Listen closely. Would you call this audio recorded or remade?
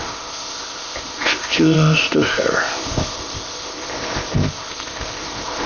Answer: remade